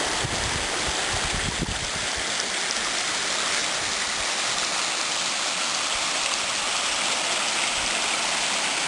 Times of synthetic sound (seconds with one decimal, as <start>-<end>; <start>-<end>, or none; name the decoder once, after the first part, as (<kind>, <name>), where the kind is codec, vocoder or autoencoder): none